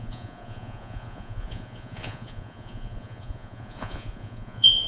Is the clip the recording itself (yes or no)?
no